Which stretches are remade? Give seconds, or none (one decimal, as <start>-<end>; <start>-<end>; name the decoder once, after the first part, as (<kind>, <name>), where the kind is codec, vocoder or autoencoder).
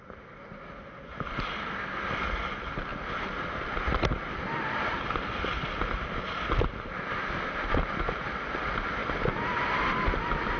none